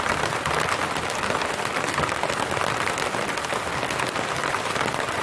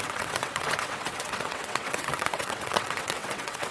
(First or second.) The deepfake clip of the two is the second